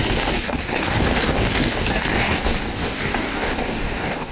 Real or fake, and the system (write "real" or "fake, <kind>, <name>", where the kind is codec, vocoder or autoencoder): fake, codec, DAC